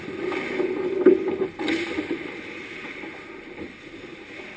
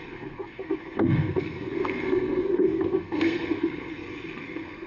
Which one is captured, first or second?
first